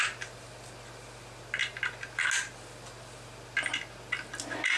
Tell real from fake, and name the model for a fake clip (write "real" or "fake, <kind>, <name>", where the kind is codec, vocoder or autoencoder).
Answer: real